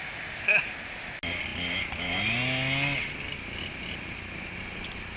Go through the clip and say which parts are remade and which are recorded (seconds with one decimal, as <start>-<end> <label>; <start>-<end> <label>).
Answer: 0.0-5.2 recorded